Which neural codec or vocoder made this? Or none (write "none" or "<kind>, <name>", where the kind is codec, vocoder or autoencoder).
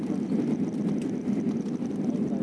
none